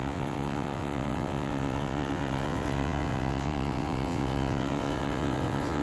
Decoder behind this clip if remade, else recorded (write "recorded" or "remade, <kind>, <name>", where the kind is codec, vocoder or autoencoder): remade, vocoder, WaveNeXt